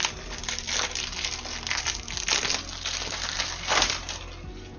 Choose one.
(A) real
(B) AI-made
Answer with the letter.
A